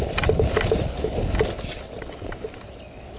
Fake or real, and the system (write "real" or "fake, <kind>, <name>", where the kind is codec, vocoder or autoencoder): real